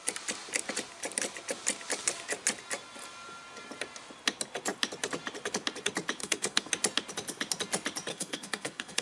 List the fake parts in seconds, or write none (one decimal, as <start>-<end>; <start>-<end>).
6.2-6.7; 8.1-9.0